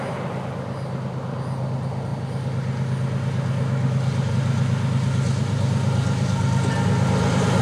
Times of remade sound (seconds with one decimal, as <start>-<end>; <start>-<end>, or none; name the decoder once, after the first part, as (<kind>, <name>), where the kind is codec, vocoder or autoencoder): none